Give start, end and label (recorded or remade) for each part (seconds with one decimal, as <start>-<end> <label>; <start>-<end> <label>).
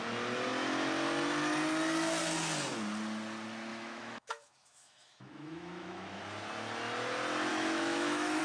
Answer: 0.0-3.7 recorded; 3.7-6.2 remade; 6.2-7.5 recorded; 7.5-8.4 remade